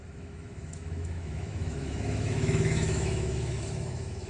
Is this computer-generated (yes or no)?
yes